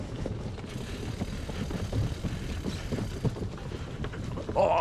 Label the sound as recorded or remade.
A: recorded